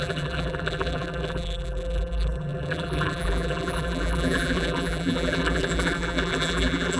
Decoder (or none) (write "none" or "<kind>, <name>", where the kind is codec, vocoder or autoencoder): vocoder, BigVGAN v2